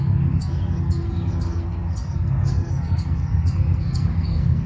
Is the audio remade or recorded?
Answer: remade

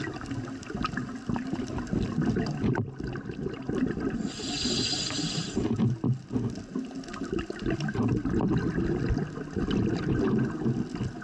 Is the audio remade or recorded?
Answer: recorded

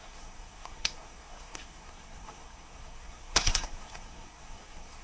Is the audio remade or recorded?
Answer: remade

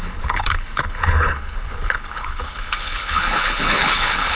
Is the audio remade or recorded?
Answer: remade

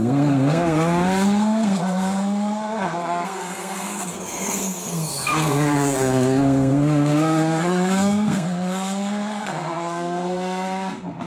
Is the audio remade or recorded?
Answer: remade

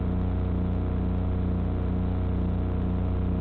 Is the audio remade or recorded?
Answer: recorded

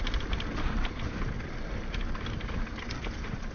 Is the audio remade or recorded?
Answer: recorded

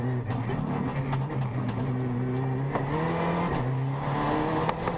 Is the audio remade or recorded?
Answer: recorded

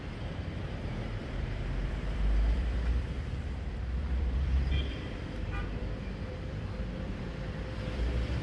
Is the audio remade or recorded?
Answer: remade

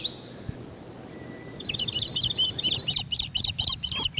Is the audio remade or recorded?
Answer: recorded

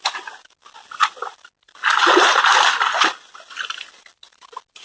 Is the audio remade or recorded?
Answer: recorded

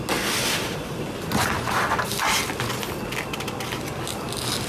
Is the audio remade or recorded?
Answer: recorded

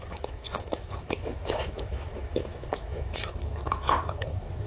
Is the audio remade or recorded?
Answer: remade